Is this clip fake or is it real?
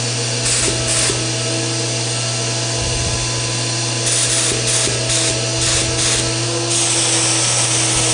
real